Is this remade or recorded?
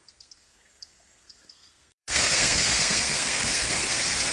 remade